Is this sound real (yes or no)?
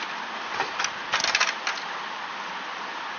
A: yes